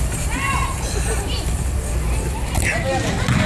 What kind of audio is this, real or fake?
real